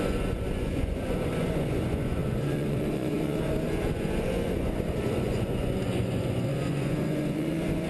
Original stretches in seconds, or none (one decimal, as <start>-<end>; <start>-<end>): none